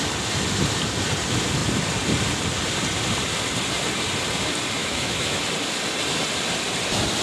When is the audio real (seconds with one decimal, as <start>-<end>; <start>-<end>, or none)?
0.0-4.8; 5.4-7.2